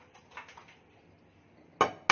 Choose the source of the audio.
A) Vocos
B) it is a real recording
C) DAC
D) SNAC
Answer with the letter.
B